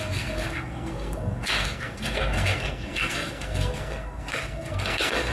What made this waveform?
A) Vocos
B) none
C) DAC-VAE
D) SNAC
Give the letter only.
D